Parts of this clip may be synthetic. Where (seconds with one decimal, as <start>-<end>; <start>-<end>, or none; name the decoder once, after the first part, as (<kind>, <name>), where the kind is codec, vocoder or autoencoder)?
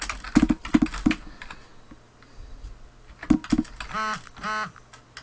none